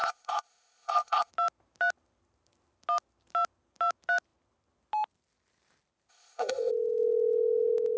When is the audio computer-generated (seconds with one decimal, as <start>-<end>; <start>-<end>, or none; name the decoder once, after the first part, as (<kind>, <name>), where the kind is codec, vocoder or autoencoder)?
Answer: 0.0-1.3 (codec, ZipCodec); 6.1-6.7